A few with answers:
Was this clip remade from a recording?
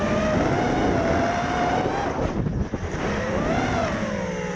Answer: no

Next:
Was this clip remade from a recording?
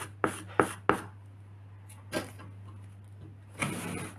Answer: no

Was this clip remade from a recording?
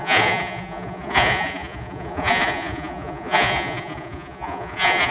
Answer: yes